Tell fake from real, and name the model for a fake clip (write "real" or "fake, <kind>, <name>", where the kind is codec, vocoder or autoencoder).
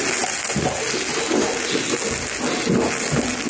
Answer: real